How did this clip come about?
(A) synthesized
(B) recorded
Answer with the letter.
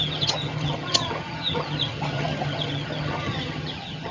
A